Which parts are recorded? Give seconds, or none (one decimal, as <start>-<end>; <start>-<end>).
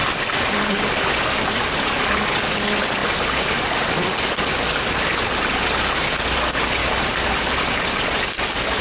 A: 0.0-6.8; 7.7-8.8